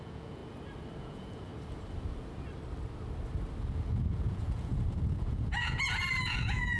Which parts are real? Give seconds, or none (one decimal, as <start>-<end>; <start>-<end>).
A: 0.4-1.0; 1.5-3.6